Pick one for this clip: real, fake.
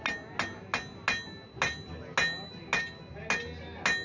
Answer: real